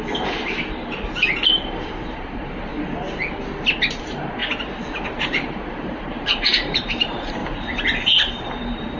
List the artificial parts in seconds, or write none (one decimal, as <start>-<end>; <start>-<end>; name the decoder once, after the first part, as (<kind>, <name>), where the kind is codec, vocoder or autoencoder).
0.0-2.7 (vocoder, BigVGAN v2); 4.0-4.4; 5.2-7.4; 8.0-9.0

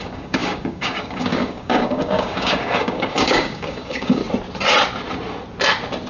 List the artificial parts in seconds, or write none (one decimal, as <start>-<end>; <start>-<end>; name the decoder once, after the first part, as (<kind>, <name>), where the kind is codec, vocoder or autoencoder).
0.0-4.2 (codec, DAC)

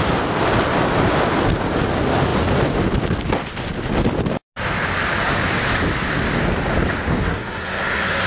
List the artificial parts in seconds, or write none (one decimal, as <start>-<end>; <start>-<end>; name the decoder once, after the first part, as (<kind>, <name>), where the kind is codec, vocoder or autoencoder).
7.2-8.3 (codec, SNAC)

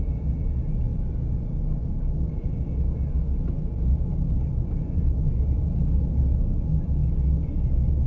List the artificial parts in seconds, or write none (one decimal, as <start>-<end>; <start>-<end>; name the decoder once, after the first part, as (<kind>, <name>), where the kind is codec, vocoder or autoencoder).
none

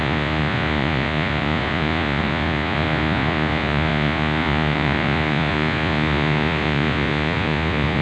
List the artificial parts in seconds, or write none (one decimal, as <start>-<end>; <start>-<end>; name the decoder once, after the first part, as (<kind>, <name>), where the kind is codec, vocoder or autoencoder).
0.0-8.0 (vocoder, Vocos)

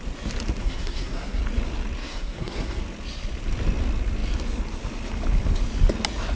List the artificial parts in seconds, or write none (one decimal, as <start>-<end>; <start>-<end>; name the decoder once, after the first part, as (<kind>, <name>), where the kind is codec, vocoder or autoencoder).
0.6-1.4 (codec, SNAC); 2.0-2.8

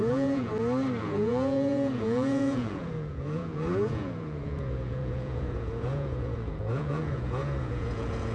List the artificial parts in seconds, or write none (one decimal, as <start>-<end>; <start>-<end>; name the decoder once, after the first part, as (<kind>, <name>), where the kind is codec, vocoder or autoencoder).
0.0-0.5 (vocoder, Vocos); 1.0-8.3